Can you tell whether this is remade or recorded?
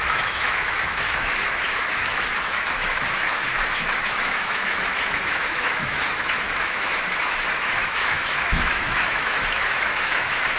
remade